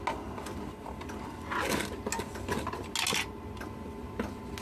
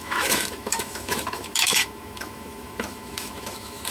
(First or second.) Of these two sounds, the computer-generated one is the second